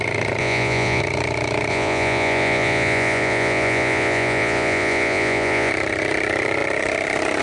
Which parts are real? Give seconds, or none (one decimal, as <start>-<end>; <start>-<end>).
0.0-0.4; 1.0-1.7; 5.7-7.4